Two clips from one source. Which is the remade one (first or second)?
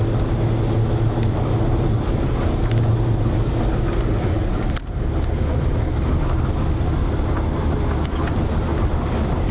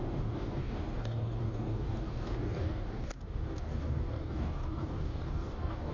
second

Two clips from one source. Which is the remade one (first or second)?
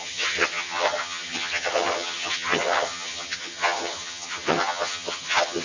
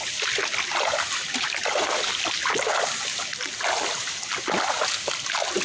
first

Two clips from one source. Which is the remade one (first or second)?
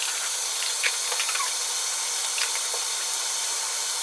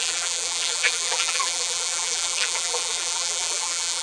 second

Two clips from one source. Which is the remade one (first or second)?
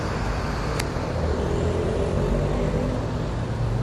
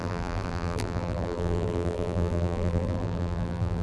second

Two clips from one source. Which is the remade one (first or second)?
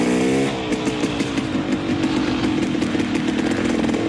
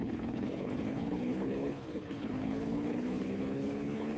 second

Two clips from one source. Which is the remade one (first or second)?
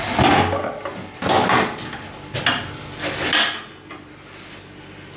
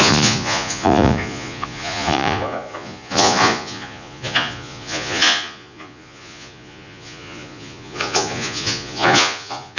second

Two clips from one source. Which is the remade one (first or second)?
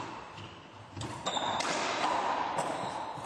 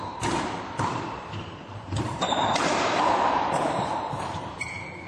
second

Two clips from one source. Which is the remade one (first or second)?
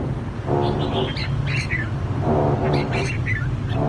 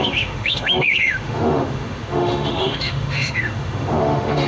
second